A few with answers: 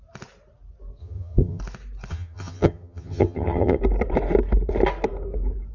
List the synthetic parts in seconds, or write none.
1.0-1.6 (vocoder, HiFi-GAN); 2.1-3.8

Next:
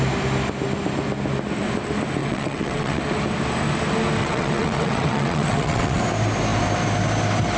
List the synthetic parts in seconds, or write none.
2.2-3.0 (vocoder, WaveNeXt); 4.2-6.0

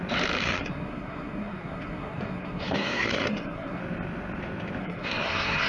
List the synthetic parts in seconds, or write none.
0.4-3.8 (codec, SNAC); 4.8-5.7

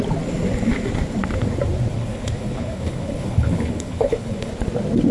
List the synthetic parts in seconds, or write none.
1.9-4.5 (codec, HILCodec)

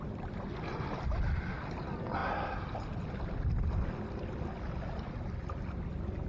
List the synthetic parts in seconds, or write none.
none

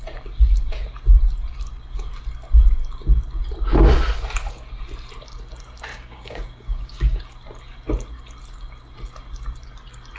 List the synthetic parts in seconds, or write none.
5.9-7.2 (codec, DAC)